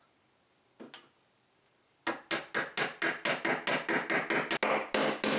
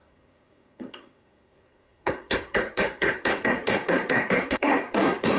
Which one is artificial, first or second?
second